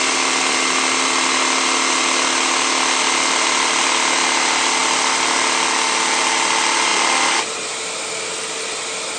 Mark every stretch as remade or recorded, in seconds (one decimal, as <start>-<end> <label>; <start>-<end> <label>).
0.0-9.2 recorded